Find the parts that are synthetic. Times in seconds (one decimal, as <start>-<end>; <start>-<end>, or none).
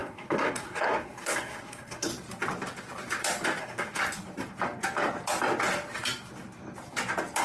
0.0-2.1; 3.6-4.0